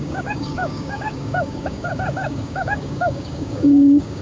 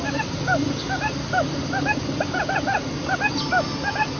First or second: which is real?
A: second